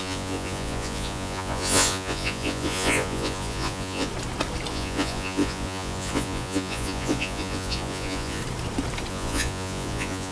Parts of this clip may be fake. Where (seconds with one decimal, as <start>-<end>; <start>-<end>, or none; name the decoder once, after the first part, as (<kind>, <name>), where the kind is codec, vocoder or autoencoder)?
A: 0.0-4.1 (vocoder, Vocos); 4.7-8.4; 9.1-10.3